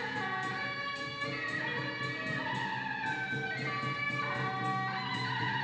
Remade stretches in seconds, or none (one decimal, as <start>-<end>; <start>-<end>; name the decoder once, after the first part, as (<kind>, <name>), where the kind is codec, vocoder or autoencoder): 0.0-1.7 (vocoder, Vocos); 5.1-5.6

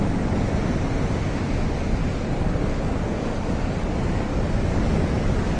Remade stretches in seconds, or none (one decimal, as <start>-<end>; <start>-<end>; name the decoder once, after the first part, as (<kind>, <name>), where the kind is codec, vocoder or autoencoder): 2.0-5.6 (codec, DAC)

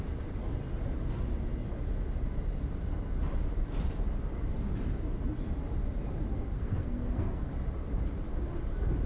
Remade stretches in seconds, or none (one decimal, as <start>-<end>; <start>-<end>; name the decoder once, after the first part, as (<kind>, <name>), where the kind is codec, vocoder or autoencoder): 6.3-7.5 (codec, SNAC)

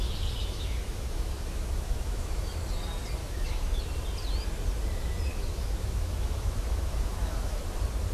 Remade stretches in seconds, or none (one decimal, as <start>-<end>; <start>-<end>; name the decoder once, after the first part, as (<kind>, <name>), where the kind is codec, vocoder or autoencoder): 0.4-2.5 (autoencoder, DAC-VAE); 3.2-3.8; 5.3-7.6